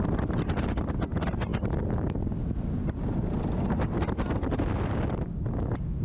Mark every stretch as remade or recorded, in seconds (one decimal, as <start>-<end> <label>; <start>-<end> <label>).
0.0-6.0 recorded